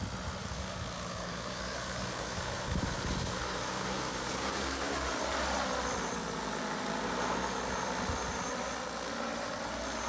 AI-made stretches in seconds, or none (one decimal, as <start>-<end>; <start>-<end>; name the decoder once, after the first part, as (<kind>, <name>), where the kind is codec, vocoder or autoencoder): 0.4-5.1 (codec, DAC)